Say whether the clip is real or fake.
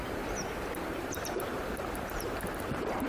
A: fake